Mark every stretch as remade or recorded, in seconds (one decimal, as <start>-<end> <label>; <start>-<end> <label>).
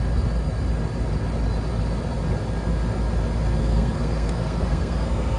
0.0-3.6 recorded; 3.6-5.4 remade